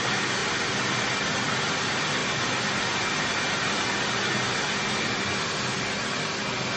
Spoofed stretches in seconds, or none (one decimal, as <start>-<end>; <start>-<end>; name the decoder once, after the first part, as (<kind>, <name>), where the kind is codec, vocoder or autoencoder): none